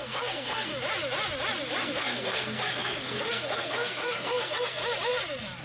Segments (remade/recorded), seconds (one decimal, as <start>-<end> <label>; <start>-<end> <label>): 0.0-0.7 remade; 0.7-1.8 recorded; 1.8-4.8 remade; 4.8-5.6 recorded